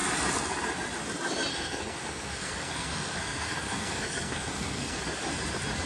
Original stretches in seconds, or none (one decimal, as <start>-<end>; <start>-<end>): 0.0-1.5; 5.0-5.9